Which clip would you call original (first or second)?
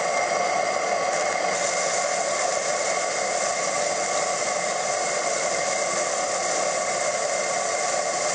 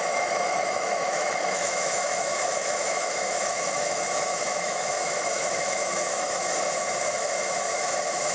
first